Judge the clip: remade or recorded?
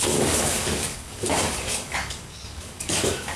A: remade